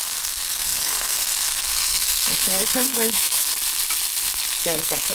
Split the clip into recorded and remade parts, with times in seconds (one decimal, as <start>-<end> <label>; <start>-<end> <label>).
0.0-3.5 remade; 3.5-4.6 recorded; 4.6-5.1 remade